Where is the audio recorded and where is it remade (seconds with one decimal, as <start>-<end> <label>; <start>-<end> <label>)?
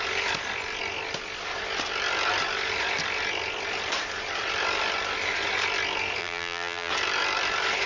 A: 0.0-6.2 recorded; 6.2-6.9 remade; 6.9-7.9 recorded